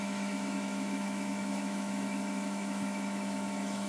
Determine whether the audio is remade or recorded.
remade